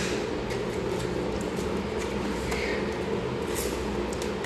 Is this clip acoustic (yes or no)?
yes